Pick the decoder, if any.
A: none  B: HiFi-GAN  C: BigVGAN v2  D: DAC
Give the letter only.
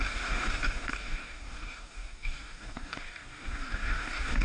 D